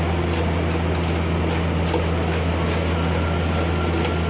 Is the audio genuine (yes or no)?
yes